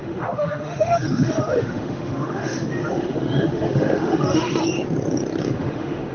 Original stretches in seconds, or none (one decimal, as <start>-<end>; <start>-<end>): 4.6-5.4